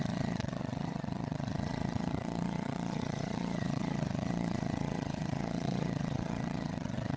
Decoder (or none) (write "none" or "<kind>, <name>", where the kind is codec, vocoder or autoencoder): vocoder, Vocos